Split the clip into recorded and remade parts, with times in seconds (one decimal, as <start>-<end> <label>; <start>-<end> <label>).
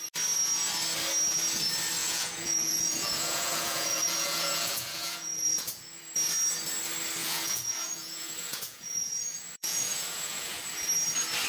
0.0-2.0 recorded; 2.0-6.0 remade; 6.0-7.2 recorded; 7.2-10.6 remade; 10.6-11.5 recorded